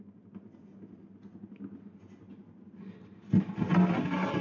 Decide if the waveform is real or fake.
real